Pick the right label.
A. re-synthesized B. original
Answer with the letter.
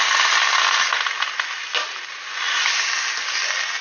B